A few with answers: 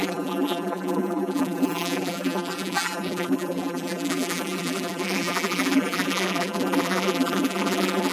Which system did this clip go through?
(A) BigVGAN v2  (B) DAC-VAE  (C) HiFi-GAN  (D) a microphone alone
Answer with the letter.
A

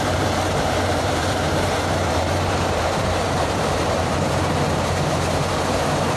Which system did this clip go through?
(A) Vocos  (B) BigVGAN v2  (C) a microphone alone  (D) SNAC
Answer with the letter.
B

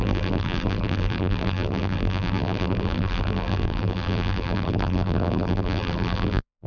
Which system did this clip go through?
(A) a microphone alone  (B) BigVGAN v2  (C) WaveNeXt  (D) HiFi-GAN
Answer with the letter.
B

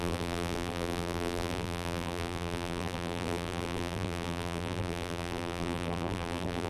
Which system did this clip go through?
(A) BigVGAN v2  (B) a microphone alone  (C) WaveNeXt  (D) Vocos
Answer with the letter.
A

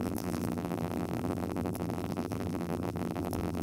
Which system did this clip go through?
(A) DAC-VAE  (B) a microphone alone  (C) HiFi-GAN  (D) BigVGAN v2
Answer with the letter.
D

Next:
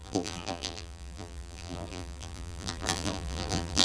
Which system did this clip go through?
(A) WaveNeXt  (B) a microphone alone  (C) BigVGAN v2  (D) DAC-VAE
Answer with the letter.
C